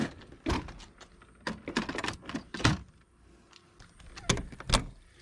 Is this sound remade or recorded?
recorded